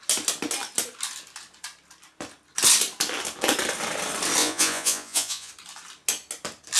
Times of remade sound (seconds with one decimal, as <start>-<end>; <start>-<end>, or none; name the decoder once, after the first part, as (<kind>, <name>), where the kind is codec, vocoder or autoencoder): 4.4-5.5 (vocoder, Vocos)